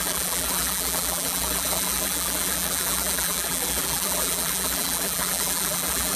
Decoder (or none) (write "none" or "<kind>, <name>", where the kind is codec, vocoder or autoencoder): vocoder, BigVGAN v2